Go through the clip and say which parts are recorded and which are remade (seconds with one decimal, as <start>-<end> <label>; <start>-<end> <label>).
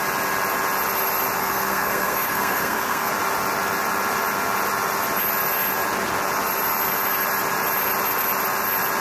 0.0-1.4 recorded; 1.4-3.1 remade; 3.1-9.0 recorded